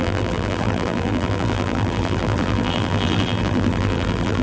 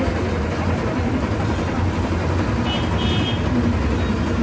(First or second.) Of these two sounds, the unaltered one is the second